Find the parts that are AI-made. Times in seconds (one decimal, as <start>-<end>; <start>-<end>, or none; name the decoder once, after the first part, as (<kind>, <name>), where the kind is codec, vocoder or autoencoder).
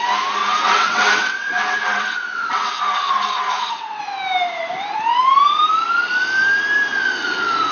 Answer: 0.4-4.0 (vocoder, WaveNeXt)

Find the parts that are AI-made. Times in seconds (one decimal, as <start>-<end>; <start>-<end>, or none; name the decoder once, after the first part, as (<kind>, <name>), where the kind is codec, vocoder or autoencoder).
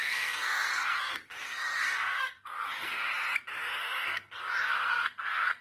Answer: 0.0-3.1 (codec, SNAC); 3.8-5.6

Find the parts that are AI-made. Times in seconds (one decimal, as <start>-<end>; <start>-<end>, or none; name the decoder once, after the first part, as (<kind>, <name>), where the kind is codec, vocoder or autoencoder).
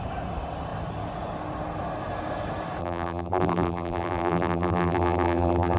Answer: 2.8-5.8 (vocoder, BigVGAN v2)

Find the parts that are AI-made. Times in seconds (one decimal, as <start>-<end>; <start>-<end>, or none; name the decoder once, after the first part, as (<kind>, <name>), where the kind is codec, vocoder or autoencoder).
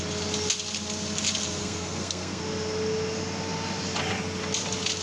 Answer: 1.6-2.4 (codec, SNAC)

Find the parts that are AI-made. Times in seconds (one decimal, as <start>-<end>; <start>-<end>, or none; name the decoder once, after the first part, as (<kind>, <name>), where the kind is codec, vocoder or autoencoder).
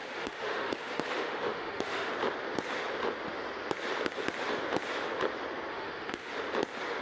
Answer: 0.0-2.1 (autoencoder, DAC-VAE); 5.7-6.3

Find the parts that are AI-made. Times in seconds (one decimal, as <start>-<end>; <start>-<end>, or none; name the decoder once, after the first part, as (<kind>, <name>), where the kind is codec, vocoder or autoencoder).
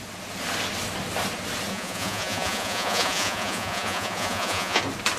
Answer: 1.7-4.8 (vocoder, Vocos)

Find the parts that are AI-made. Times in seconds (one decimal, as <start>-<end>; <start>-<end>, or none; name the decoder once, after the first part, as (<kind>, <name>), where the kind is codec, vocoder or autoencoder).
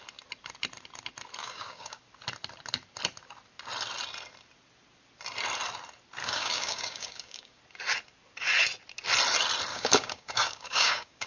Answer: 1.4-2.0 (codec, DAC); 6.2-7.6; 9.7-11.3